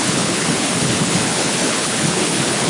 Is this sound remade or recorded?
remade